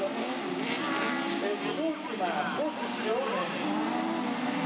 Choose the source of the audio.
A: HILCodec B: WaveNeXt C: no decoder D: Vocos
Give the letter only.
C